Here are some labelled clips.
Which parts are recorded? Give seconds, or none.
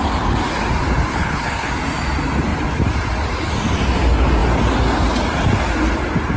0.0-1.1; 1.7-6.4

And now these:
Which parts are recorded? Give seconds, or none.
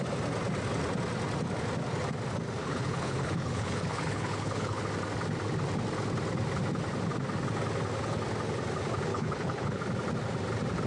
0.0-2.6; 4.8-9.1; 9.8-10.9